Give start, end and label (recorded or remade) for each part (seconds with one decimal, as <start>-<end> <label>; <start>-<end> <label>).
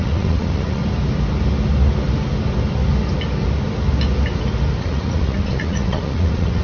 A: 0.0-0.8 remade; 0.8-4.8 recorded; 4.8-6.6 remade